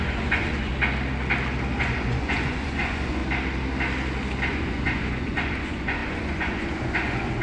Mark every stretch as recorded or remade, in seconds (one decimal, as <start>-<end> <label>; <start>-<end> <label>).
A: 0.0-0.7 remade; 0.7-1.8 recorded; 1.8-3.2 remade; 3.2-4.5 recorded; 4.5-7.4 remade